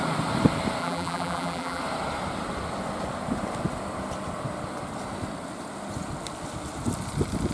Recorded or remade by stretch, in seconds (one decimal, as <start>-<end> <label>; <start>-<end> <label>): 0.0-0.8 recorded; 0.8-1.8 remade; 1.8-7.5 recorded